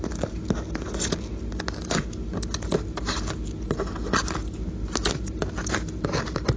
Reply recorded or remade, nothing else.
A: recorded